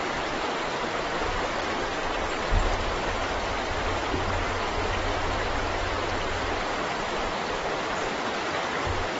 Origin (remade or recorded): recorded